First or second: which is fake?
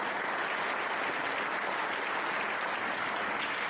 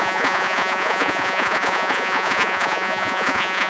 second